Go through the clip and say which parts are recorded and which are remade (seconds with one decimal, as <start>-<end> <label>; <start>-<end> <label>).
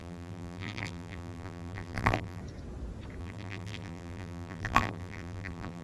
0.0-2.4 remade; 2.4-3.2 recorded; 3.2-5.8 remade